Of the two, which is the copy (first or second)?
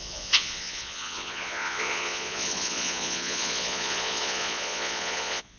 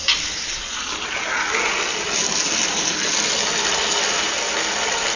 first